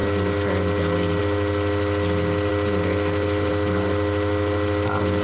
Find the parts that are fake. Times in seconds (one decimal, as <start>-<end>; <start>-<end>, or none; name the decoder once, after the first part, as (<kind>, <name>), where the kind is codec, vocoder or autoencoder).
none